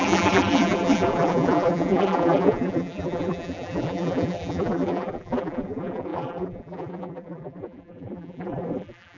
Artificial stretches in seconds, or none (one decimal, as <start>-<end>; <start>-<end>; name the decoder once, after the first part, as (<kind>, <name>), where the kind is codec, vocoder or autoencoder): 0.0-9.2 (vocoder, BigVGAN v2)